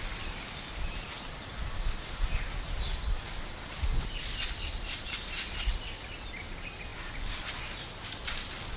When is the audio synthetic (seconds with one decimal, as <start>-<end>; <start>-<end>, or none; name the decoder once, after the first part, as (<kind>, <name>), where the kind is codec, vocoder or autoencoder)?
none